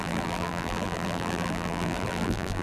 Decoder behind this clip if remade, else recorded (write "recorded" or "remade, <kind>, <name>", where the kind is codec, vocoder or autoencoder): remade, vocoder, BigVGAN v2